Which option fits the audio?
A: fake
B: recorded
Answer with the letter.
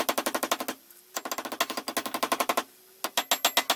B